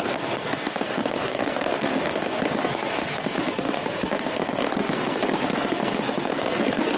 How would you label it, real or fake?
fake